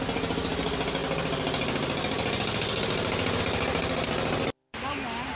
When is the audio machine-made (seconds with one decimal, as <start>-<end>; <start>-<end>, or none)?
none